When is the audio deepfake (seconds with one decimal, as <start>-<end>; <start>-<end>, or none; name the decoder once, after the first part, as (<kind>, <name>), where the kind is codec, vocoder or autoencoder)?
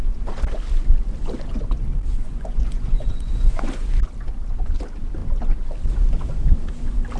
2.2-3.7 (vocoder, Vocos)